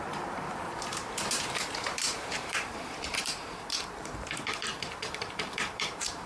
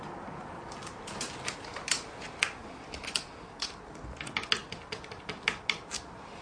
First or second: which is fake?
first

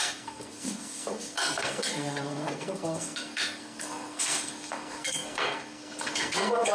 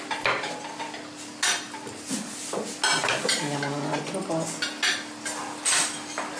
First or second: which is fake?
first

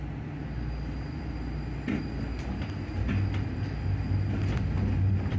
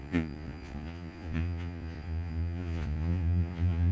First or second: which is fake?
second